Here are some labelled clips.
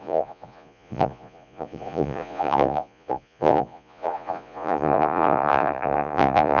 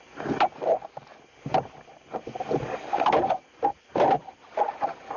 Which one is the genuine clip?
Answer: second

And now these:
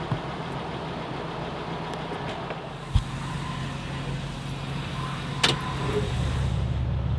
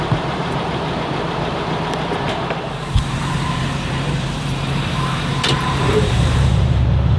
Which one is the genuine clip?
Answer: first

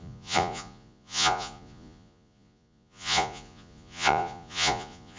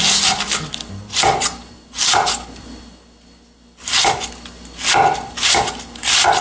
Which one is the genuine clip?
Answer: second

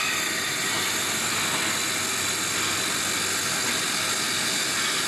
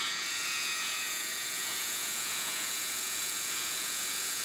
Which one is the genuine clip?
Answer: first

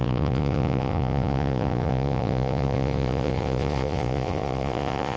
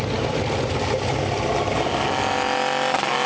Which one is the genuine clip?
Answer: second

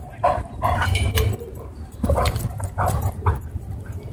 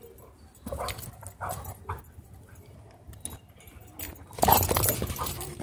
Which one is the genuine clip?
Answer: second